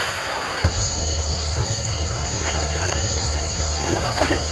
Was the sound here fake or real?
fake